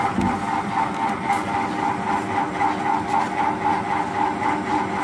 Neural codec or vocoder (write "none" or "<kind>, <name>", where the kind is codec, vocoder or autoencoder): none